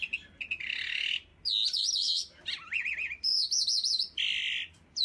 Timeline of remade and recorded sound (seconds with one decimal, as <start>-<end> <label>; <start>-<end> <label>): 0.0-1.3 remade; 1.3-1.9 recorded; 1.9-3.3 remade; 3.3-4.0 recorded; 4.0-5.0 remade